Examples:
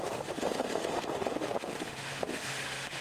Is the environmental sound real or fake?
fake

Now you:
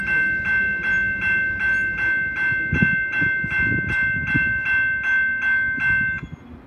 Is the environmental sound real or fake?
real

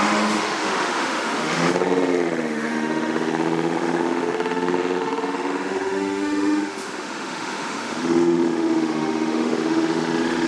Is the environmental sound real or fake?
fake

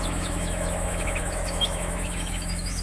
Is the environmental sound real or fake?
fake